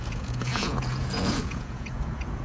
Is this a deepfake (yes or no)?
yes